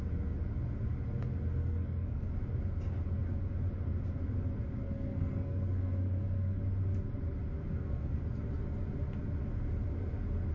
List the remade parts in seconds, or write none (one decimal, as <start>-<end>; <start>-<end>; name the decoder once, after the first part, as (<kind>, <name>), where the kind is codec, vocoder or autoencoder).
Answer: 1.6-2.3 (codec, SNAC); 4.8-6.6; 7.7-8.2